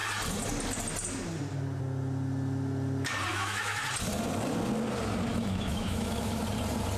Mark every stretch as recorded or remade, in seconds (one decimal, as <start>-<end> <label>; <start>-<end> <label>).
0.0-3.3 recorded; 3.3-3.8 remade; 3.8-5.3 recorded; 5.3-6.4 remade; 6.4-7.0 recorded